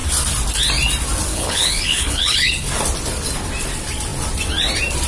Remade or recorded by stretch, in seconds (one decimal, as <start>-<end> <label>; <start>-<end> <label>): 0.0-1.3 recorded; 1.3-2.7 remade; 2.7-5.1 recorded